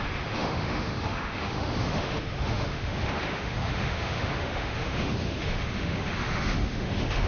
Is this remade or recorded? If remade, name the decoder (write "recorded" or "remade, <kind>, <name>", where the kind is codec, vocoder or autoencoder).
remade, autoencoder, DAC-VAE